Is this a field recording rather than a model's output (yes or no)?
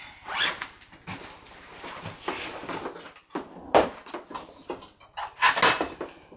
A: yes